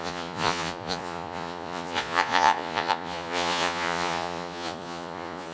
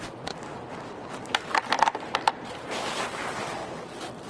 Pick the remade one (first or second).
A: first